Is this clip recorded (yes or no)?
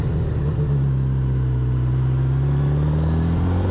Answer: yes